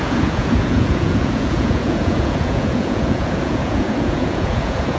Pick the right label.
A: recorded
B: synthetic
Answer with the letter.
B